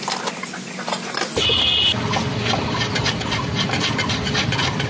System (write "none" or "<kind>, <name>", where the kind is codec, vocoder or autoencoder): none